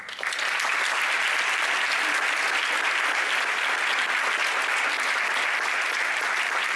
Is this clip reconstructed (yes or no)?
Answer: no